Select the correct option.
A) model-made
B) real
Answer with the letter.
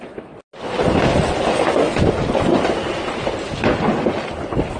B